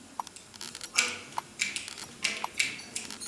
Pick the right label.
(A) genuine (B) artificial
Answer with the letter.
A